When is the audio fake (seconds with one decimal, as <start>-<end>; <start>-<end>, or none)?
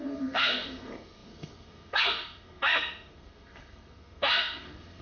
0.0-5.0